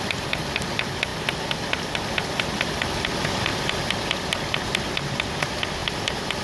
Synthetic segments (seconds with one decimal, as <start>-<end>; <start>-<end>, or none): none

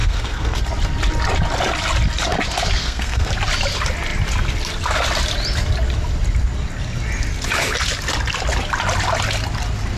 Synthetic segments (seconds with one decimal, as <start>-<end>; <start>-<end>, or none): 0.0-0.6; 2.8-3.3

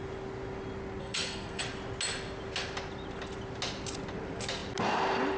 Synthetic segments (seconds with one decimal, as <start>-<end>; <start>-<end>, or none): 1.0-1.6

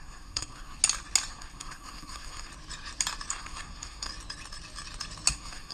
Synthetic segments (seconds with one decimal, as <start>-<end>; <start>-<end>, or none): 0.0-0.8; 1.3-2.5; 3.3-4.1; 5.3-5.7

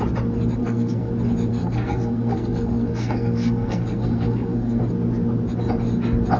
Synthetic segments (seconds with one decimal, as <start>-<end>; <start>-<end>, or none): 0.6-1.1; 1.5-4.8

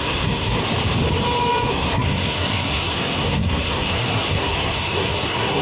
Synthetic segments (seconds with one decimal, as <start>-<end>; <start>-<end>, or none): 0.0-0.6; 1.7-5.6